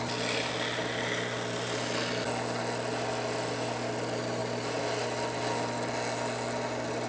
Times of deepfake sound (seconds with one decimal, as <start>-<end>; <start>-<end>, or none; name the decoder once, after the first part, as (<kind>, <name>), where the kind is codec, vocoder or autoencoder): none